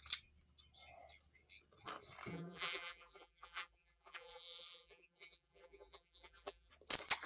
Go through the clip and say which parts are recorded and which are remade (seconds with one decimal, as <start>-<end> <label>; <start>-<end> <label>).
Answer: 0.0-2.3 recorded; 2.3-6.7 remade; 6.7-7.3 recorded